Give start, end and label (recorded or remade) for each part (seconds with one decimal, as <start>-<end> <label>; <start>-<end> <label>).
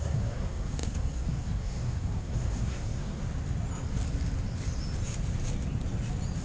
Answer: 0.0-3.2 remade; 3.2-6.4 recorded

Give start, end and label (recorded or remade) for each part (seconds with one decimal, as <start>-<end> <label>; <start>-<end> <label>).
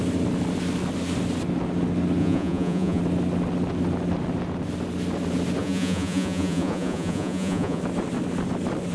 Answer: 0.0-2.2 recorded; 2.2-3.0 remade; 3.0-5.6 recorded; 5.6-7.8 remade; 7.8-8.9 recorded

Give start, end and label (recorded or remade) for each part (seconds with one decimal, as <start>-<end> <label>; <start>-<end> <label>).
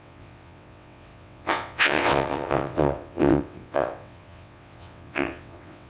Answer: 0.0-5.9 remade